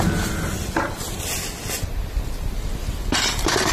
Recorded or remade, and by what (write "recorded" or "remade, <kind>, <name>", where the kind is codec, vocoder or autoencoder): recorded